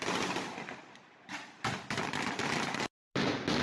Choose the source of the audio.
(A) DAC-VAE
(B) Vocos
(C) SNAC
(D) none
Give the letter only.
D